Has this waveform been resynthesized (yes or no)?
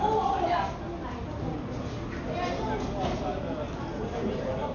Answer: no